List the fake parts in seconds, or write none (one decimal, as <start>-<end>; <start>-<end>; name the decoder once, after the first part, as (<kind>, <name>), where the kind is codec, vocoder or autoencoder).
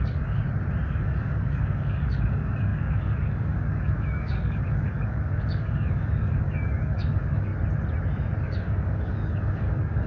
0.0-0.4 (codec, DAC); 0.9-7.5; 8.4-10.1